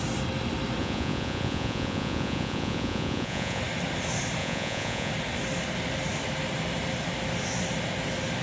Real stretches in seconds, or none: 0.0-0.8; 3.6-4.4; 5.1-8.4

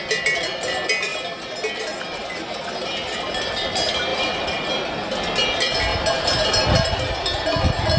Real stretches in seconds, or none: 0.0-4.1; 4.7-5.9; 7.0-8.0

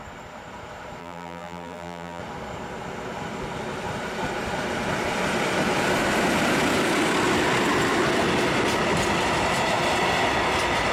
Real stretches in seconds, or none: 0.0-1.0; 2.2-10.9

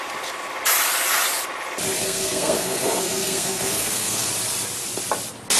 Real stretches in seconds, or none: 0.0-2.0; 4.3-5.6

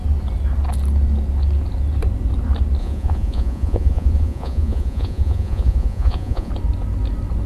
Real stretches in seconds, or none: 0.0-2.8; 6.5-7.5